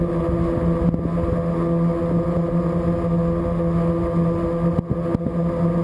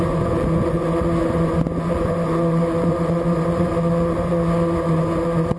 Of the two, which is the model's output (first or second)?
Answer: second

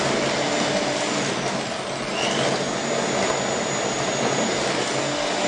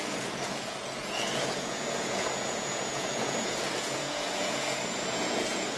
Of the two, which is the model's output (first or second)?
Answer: second